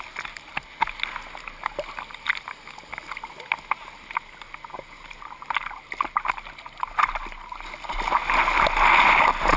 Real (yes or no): yes